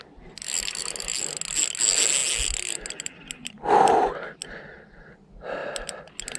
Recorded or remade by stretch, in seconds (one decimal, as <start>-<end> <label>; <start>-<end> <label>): 0.0-6.4 recorded